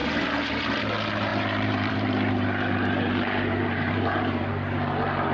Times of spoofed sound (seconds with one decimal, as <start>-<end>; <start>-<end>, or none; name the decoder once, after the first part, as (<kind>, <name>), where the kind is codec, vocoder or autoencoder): 0.0-0.8 (vocoder, BigVGAN v2); 1.3-4.5